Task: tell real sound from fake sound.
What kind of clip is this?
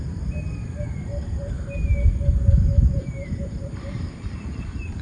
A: fake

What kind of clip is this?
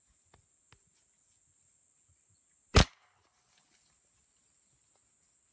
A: real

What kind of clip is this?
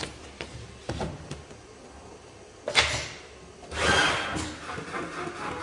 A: real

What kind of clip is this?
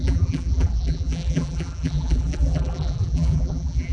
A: fake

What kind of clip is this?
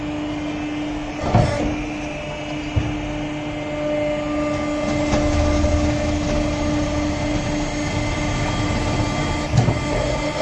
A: real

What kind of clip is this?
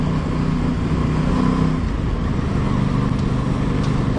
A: real